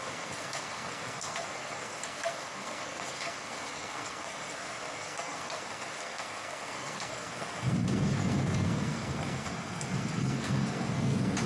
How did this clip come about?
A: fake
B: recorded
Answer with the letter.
A